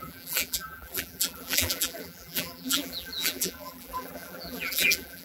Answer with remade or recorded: remade